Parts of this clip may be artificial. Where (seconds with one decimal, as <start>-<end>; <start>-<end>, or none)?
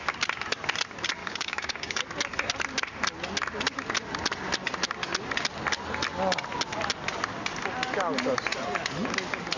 1.2-2.0